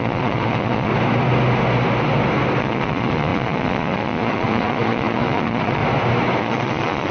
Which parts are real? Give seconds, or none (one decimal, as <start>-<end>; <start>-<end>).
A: 0.9-2.6; 5.8-6.4